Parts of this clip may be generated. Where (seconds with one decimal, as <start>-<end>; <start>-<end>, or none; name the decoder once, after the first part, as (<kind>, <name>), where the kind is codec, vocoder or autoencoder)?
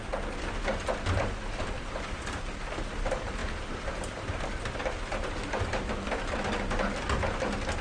0.8-2.4 (vocoder, BigVGAN v2)